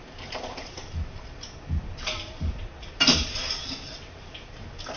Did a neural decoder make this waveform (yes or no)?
yes